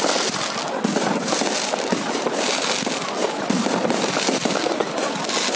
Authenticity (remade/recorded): recorded